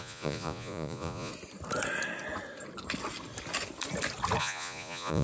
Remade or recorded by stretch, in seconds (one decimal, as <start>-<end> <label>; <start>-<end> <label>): 0.0-1.3 remade; 1.3-4.4 recorded; 4.4-5.2 remade